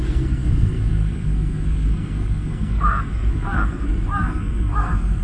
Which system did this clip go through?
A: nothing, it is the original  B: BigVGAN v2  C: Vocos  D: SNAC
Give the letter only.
D